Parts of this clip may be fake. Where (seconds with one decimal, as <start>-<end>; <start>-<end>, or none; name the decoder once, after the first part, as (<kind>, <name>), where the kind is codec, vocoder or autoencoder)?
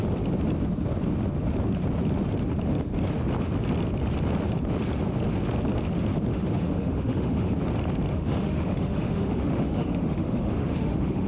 6.3-7.5 (autoencoder, DAC-VAE); 8.1-11.3